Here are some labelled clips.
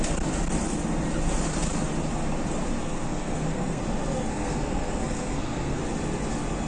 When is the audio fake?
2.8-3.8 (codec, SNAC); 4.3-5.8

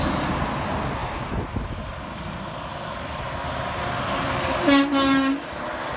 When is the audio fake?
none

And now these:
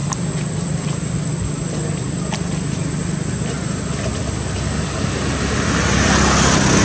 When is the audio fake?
none

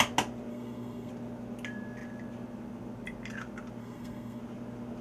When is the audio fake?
0.5-1.1 (codec, SNAC); 3.8-4.4

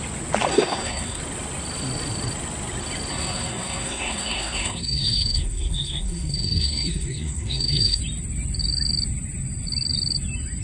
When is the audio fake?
0.5-1.2 (codec, SNAC); 3.1-8.0

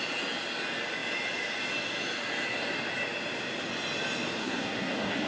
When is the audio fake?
4.4-5.3 (codec, SNAC)

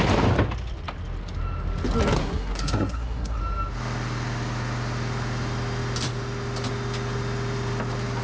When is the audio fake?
2.2-3.4 (codec, SNAC)